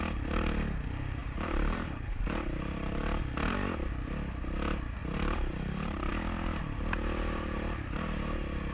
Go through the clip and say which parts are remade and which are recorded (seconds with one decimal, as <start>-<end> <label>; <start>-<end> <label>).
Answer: 0.0-1.2 recorded; 1.2-3.2 remade; 3.2-5.0 recorded; 5.0-6.1 remade; 6.1-8.7 recorded